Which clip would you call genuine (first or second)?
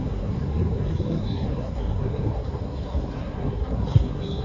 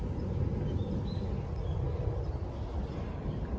second